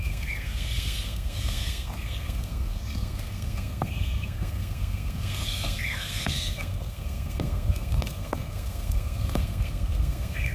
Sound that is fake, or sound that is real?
fake